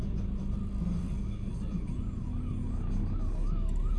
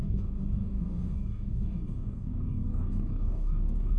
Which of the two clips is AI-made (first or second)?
second